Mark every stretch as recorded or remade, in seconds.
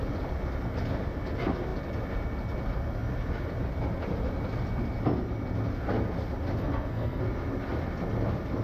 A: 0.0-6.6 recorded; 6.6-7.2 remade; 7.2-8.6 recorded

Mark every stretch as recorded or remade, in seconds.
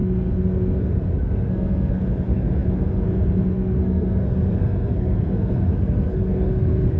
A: 0.0-7.0 remade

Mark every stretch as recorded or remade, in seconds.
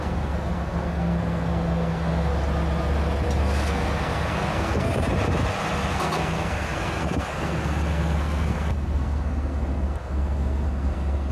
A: 0.0-2.3 remade; 2.3-3.4 recorded; 3.4-4.9 remade; 4.9-5.9 recorded; 5.9-11.3 remade